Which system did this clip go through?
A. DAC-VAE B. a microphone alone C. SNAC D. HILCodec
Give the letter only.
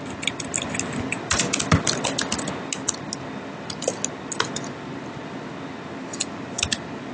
B